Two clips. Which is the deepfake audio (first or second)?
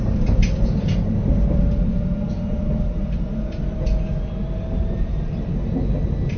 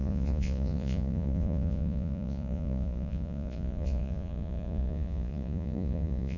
second